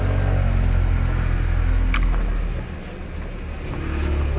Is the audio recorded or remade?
recorded